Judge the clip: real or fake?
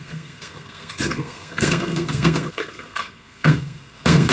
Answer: fake